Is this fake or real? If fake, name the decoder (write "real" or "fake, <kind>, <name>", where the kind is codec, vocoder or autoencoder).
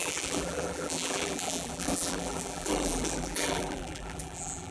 fake, vocoder, BigVGAN v2